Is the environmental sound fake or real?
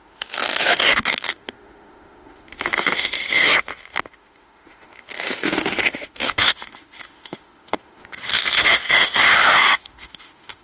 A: fake